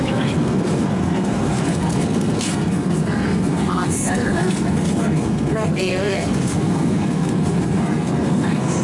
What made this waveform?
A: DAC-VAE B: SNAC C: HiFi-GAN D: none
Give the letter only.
B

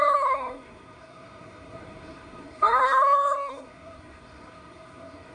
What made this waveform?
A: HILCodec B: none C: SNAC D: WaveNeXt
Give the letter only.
C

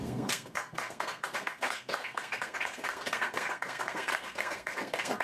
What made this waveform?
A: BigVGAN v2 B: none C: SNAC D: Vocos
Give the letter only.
C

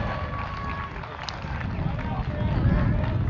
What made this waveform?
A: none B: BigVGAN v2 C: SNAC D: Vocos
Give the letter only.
A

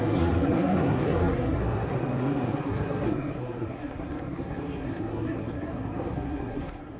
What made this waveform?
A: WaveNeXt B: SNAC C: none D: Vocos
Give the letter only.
B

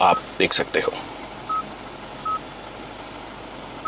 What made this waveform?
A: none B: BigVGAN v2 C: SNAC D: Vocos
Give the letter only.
A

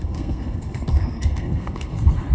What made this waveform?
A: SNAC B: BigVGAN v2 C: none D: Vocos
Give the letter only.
A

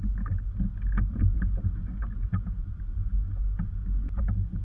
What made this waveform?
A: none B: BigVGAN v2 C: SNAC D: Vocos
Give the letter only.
A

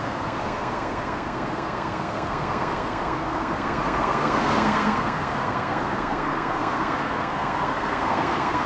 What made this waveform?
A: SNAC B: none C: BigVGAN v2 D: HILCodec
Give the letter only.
A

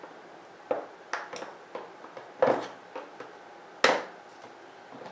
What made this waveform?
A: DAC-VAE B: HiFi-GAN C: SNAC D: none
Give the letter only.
D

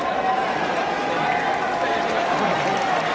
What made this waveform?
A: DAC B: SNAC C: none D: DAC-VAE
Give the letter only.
C